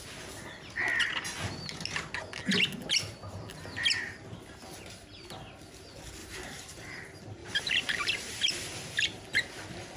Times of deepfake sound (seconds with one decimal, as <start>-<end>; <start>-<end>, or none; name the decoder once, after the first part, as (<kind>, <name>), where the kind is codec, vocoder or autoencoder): 6.2-6.9 (vocoder, BigVGAN v2); 7.4-8.5